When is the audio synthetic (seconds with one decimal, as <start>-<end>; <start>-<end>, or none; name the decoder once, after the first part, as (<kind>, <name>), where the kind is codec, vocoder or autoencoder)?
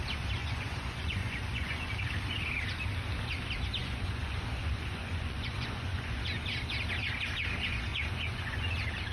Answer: 0.4-1.9 (vocoder, Vocos); 3.8-6.2; 7.9-8.7